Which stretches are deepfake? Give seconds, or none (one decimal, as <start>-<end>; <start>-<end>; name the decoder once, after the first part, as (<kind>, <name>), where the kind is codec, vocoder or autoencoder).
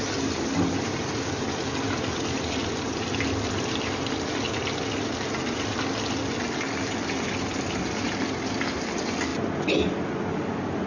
none